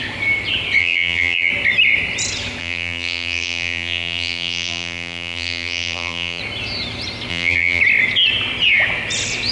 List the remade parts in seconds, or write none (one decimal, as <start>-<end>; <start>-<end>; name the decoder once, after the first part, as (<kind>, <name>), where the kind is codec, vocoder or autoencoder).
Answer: 0.8-1.5 (vocoder, BigVGAN v2); 2.6-6.4; 7.3-7.8